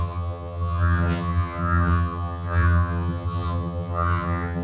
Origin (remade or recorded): remade